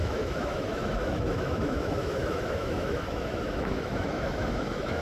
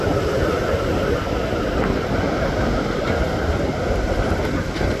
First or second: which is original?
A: second